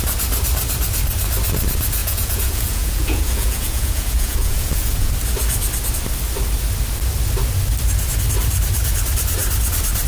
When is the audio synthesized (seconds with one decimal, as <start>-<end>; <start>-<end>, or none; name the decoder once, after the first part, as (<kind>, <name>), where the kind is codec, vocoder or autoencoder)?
2.0-5.1 (vocoder, Vocos)